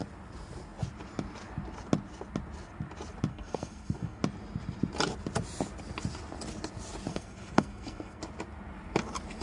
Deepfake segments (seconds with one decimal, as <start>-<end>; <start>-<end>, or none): 3.3-4.2; 7.1-8.2